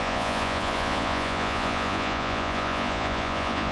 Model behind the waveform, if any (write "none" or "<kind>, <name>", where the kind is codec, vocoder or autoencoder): vocoder, Vocos